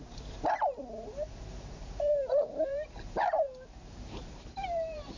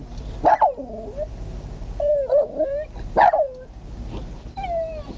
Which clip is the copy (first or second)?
first